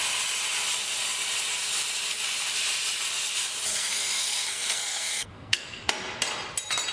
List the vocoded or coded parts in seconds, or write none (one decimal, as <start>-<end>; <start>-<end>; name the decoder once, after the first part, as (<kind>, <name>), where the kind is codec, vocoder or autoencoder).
3.7-5.9 (codec, SNAC)